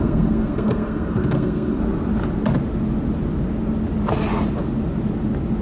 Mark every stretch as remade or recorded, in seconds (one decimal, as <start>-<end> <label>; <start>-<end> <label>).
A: 0.0-1.8 remade; 1.8-5.6 recorded